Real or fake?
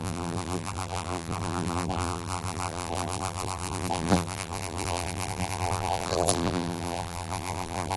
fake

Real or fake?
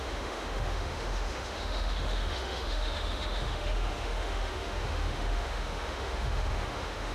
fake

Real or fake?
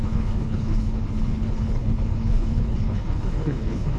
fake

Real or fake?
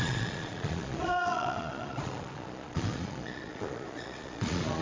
fake